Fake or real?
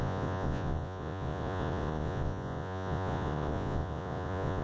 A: fake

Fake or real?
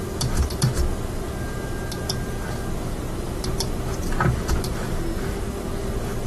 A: real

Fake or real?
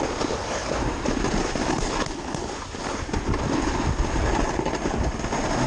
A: real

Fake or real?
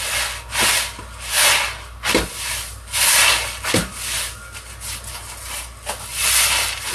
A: real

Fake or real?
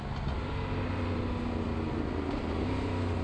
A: real